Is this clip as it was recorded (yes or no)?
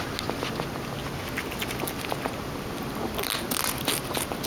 yes